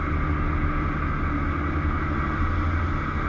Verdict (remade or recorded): recorded